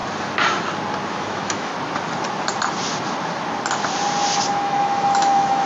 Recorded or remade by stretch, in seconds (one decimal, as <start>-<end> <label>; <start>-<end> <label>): 0.0-1.1 recorded; 1.1-1.7 remade; 1.7-4.5 recorded; 4.5-5.7 remade